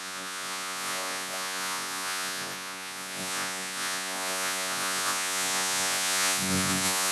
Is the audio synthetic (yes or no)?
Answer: yes